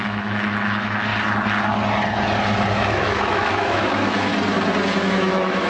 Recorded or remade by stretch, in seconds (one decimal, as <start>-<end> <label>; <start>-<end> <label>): 0.0-1.1 remade; 1.1-2.7 recorded; 2.7-4.3 remade; 4.3-5.0 recorded; 5.0-5.7 remade